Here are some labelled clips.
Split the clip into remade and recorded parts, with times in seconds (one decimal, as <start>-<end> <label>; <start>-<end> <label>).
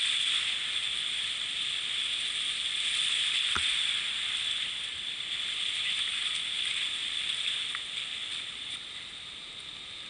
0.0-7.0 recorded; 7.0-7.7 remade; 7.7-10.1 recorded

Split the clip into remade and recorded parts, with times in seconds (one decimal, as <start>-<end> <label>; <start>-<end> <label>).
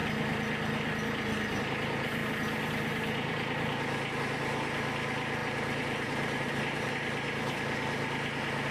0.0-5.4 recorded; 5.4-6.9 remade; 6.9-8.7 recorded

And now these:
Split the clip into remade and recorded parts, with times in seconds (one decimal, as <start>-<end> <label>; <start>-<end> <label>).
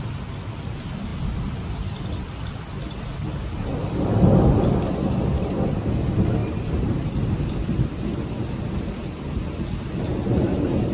0.0-1.1 recorded; 1.1-2.6 remade; 2.6-10.9 recorded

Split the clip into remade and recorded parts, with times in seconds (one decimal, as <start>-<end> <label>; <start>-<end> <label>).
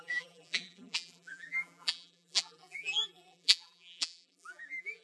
0.0-5.0 remade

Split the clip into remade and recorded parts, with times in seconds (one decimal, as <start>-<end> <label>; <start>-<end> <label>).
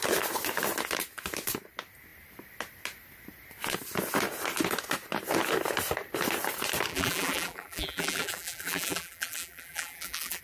0.0-6.9 recorded; 6.9-10.4 remade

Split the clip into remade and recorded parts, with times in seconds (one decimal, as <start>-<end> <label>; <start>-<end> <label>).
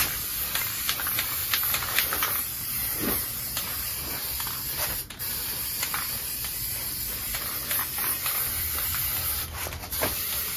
0.0-4.2 remade; 4.2-6.1 recorded; 6.1-10.6 remade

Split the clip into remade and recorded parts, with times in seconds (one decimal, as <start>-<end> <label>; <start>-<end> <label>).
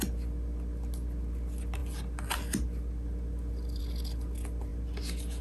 0.0-5.4 recorded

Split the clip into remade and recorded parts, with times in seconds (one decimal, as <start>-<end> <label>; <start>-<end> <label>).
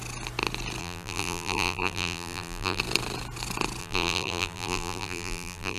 0.0-0.8 recorded; 0.8-2.8 remade; 2.8-3.8 recorded; 3.8-5.8 remade